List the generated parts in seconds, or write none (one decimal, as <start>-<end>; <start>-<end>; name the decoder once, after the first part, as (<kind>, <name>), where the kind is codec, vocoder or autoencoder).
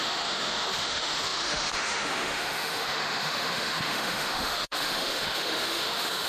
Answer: 0.0-6.3 (autoencoder, DAC-VAE)